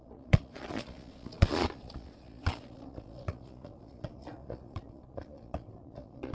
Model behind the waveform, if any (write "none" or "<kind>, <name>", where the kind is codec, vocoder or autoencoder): vocoder, Vocos